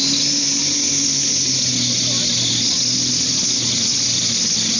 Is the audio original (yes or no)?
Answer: yes